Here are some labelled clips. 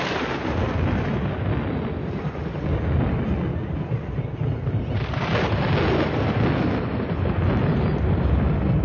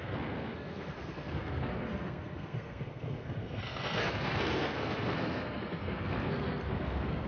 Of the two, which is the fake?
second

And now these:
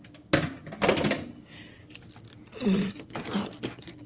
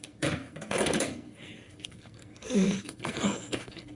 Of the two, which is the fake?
second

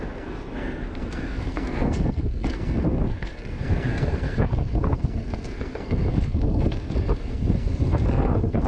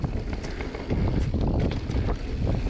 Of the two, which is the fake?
first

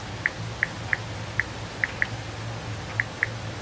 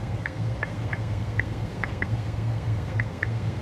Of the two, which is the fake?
second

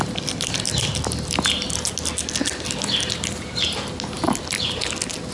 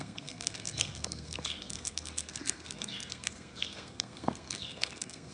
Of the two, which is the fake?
second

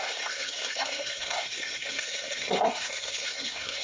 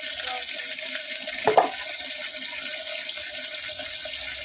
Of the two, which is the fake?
first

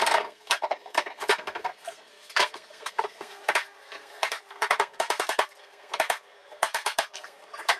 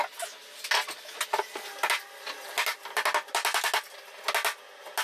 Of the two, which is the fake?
first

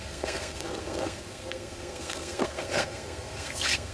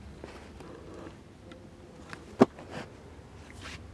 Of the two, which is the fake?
first